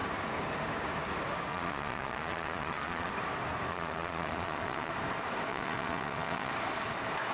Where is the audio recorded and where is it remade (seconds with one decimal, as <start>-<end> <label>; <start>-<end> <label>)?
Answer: 0.0-1.5 recorded; 1.5-3.1 remade; 3.1-3.7 recorded; 3.7-4.9 remade; 4.9-5.5 recorded; 5.5-6.5 remade; 6.5-7.3 recorded